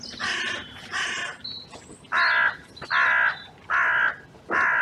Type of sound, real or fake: real